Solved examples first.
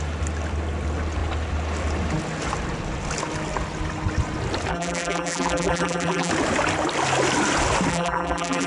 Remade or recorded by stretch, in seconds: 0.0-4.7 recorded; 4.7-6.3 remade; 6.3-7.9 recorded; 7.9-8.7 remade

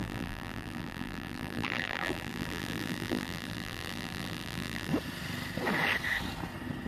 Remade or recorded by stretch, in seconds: 0.0-4.9 remade; 4.9-6.9 recorded

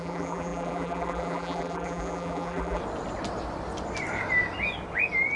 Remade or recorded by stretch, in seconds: 0.0-2.8 remade; 2.8-5.4 recorded

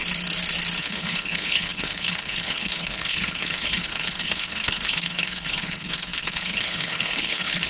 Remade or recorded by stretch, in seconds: 0.0-0.8 recorded; 0.8-7.7 remade

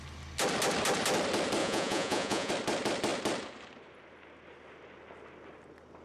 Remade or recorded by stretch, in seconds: 0.0-1.6 recorded; 1.6-2.5 remade; 2.5-6.0 recorded

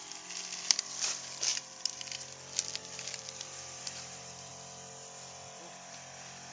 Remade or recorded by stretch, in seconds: 0.0-1.5 recorded; 1.5-2.0 remade; 2.0-2.8 recorded; 2.8-4.5 remade; 4.5-6.5 recorded

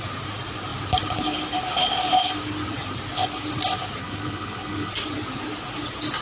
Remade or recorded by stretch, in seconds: 0.0-4.0 recorded; 4.0-4.9 remade; 4.9-6.2 recorded

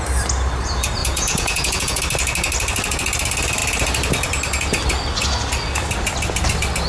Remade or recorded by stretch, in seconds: 0.0-1.0 recorded; 1.0-2.0 remade; 2.0-6.9 recorded